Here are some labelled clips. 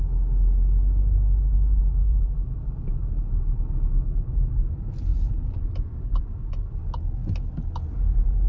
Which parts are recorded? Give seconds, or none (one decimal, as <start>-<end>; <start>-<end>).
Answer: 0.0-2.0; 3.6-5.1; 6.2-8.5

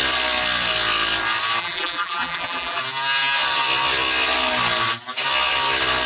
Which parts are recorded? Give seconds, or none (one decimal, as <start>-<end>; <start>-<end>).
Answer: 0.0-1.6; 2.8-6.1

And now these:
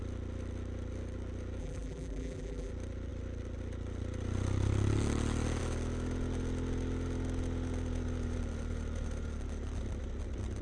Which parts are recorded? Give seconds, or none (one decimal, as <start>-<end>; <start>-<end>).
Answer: 0.0-1.6; 2.7-10.6